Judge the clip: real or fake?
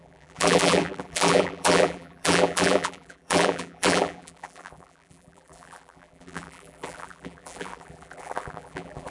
fake